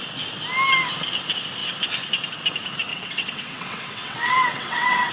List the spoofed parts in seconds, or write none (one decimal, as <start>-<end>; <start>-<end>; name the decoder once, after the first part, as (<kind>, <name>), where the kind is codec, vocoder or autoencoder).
2.9-5.1 (vocoder, WaveNeXt)